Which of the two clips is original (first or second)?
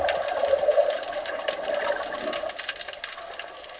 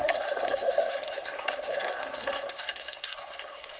first